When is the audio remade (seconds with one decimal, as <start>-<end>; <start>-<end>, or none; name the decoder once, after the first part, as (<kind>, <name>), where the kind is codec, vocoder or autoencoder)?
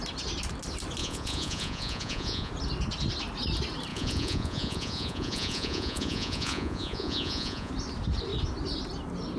1.0-2.5 (vocoder, Vocos); 3.9-7.7